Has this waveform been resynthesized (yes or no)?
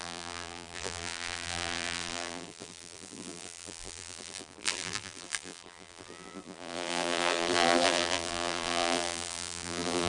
yes